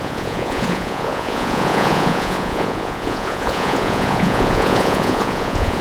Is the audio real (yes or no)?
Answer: no